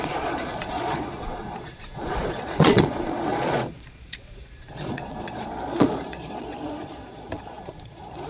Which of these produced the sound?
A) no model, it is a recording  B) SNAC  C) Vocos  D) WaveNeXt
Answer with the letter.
C